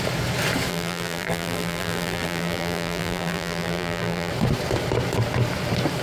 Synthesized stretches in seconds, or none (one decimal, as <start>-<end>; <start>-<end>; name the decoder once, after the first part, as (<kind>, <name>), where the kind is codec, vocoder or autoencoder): 0.7-4.3 (vocoder, BigVGAN v2)